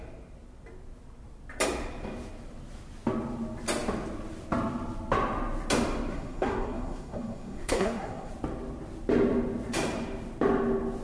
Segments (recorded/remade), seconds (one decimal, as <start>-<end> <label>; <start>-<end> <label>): 0.0-6.1 recorded; 6.1-8.3 remade; 8.3-11.0 recorded